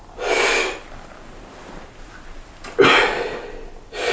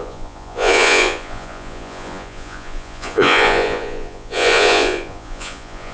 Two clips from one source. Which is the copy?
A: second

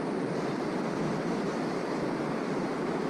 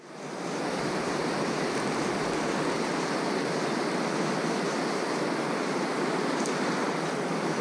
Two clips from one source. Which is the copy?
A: first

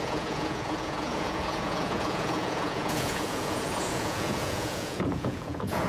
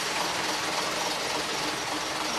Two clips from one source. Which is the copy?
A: first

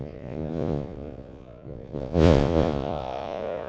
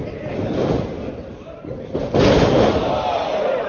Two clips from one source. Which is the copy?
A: first